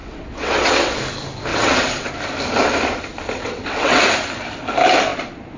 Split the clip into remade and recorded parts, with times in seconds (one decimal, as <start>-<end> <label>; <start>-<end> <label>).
0.0-1.0 remade; 1.0-1.5 recorded; 1.5-2.1 remade; 2.1-3.4 recorded; 3.4-4.0 remade; 4.0-5.6 recorded

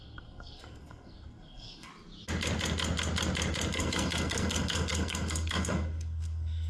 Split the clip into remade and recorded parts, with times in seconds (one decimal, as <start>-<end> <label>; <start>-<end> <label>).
0.0-1.9 remade; 1.9-3.7 recorded; 3.7-6.7 remade

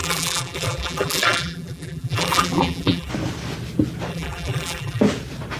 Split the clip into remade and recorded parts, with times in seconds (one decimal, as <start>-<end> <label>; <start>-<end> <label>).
0.0-3.1 remade; 3.1-4.1 recorded; 4.1-5.0 remade; 5.0-5.6 recorded

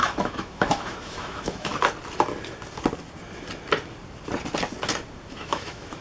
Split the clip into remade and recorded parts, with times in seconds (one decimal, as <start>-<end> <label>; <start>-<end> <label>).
0.0-1.7 remade; 1.7-5.3 recorded; 5.3-6.0 remade